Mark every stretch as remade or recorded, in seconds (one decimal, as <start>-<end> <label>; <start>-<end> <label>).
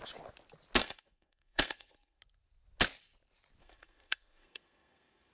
0.0-0.8 recorded; 0.8-2.2 remade; 2.2-3.6 recorded; 3.6-5.3 remade